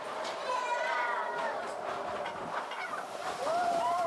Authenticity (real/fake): fake